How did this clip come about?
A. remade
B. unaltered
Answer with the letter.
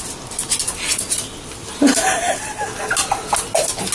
B